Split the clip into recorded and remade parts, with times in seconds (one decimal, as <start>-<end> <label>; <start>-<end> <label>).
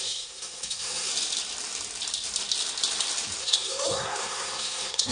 0.0-1.1 remade; 1.1-3.4 recorded; 3.4-5.1 remade